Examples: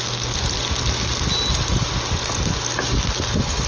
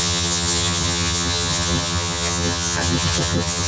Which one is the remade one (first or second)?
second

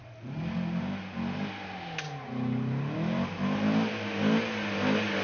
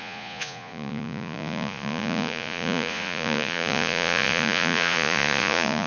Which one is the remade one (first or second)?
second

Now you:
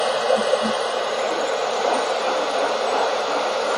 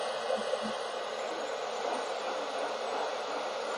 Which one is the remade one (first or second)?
first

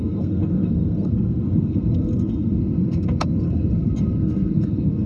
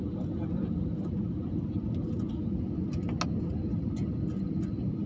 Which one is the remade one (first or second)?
first